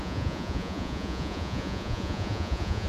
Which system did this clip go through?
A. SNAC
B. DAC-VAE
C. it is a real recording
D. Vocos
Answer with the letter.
D